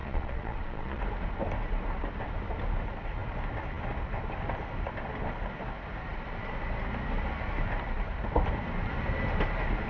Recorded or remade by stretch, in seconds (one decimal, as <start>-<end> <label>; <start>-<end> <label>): 0.0-1.0 remade; 1.0-9.9 recorded

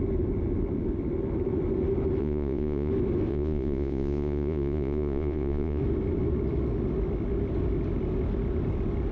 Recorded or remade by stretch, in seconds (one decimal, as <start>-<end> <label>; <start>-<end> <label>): 0.0-2.2 recorded; 2.2-2.9 remade; 2.9-3.3 recorded; 3.3-5.8 remade; 5.8-9.1 recorded